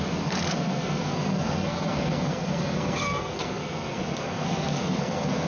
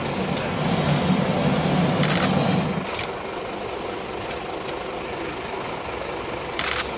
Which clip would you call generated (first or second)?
first